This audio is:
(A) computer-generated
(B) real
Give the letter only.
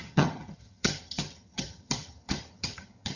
A